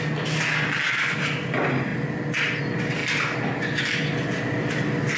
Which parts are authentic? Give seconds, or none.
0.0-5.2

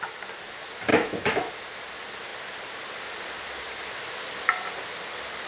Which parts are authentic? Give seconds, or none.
0.0-0.9; 1.5-5.5

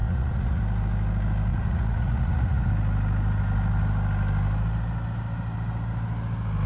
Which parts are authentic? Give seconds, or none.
0.6-1.5; 2.7-6.7

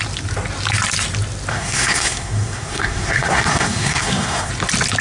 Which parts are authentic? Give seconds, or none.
0.0-1.5; 4.5-5.0

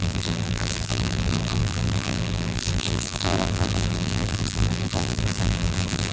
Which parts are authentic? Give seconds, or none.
none

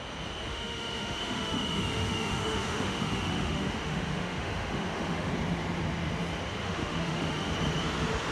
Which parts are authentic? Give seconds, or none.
0.0-0.5; 5.3-6.6; 7.5-8.3